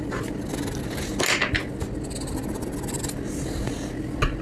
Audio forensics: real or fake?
real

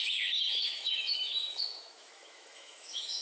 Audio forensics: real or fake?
fake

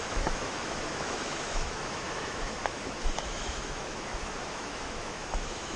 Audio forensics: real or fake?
fake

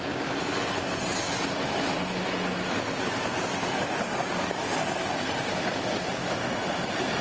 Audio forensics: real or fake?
real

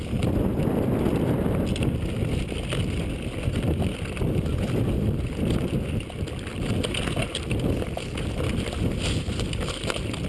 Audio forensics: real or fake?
real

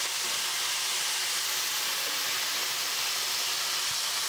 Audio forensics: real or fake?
real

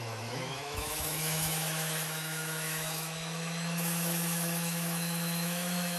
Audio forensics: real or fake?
fake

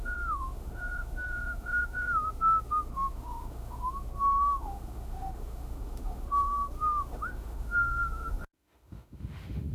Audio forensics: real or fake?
fake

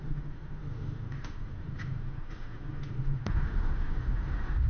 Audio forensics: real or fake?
fake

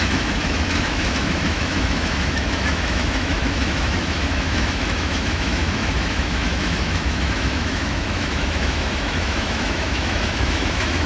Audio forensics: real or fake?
fake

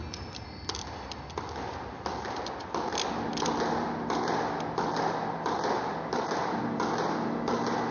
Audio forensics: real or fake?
real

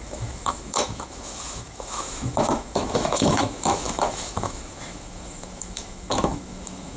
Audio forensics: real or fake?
fake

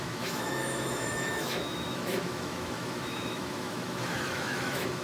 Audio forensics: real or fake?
fake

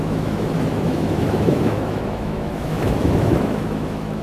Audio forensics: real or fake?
fake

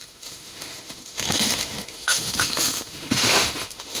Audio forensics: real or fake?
fake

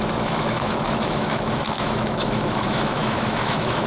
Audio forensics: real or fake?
fake